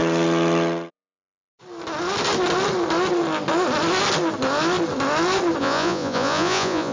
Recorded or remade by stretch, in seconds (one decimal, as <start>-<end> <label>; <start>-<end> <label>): 0.0-0.9 recorded; 0.9-1.5 remade; 1.5-5.6 recorded; 5.6-6.9 remade